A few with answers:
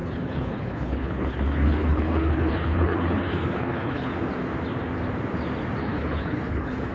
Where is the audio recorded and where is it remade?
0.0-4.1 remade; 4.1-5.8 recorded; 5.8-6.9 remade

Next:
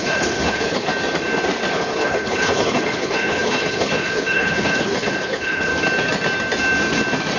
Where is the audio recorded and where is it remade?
0.0-0.9 remade; 0.9-1.7 recorded; 1.7-5.7 remade; 5.7-7.4 recorded

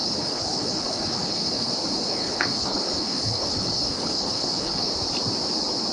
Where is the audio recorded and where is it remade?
0.0-1.7 remade; 1.7-2.1 recorded; 2.1-4.9 remade; 4.9-5.9 recorded